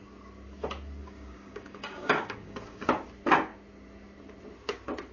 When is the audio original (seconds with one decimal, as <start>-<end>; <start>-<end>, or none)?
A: 0.0-1.0; 2.8-5.1